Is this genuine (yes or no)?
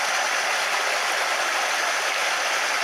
yes